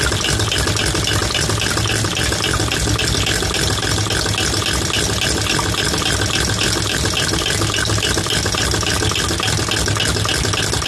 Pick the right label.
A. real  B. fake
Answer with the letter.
A